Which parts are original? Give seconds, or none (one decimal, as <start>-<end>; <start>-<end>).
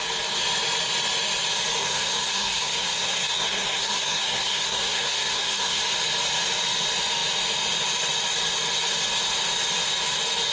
0.0-1.8; 5.8-10.5